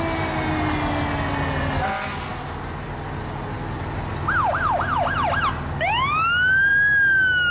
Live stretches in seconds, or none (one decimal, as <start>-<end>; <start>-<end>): 0.0-7.5